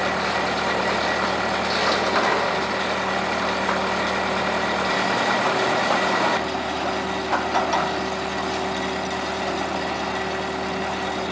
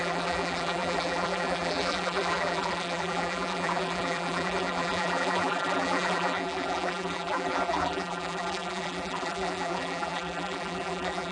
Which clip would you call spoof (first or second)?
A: second